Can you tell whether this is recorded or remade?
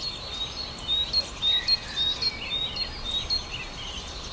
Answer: recorded